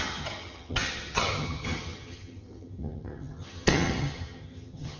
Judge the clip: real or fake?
fake